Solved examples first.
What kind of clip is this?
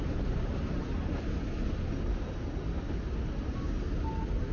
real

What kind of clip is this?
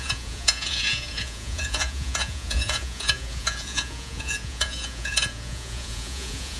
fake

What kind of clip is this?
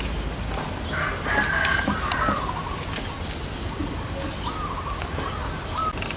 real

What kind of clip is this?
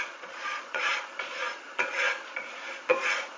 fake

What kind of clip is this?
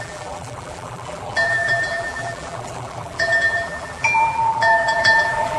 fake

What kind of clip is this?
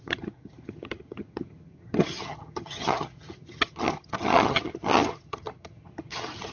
fake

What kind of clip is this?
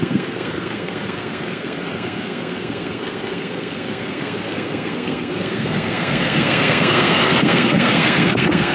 fake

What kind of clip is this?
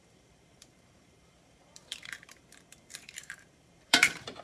fake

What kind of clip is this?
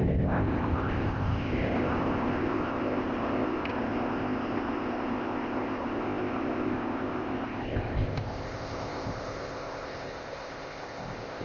fake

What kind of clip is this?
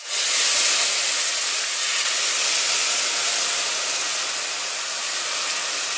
real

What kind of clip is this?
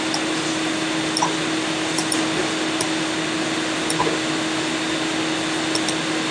real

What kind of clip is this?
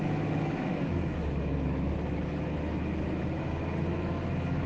fake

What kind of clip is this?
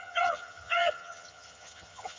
fake